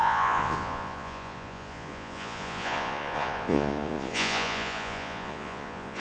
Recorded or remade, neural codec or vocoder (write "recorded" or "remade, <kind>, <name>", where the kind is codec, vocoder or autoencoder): remade, vocoder, Vocos